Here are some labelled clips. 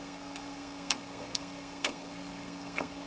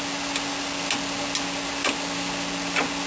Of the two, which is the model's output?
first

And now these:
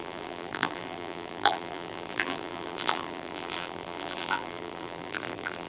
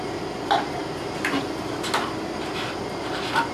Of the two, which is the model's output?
first